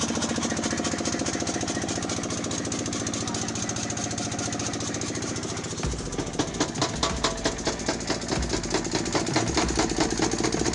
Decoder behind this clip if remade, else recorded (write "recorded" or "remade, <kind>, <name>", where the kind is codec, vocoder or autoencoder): recorded